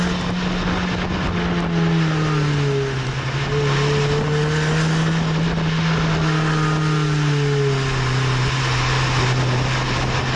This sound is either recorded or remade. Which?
recorded